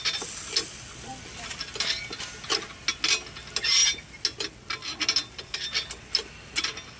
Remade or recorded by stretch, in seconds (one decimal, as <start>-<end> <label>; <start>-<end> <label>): 0.0-7.0 recorded